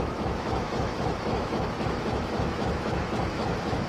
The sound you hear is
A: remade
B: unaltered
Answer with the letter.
A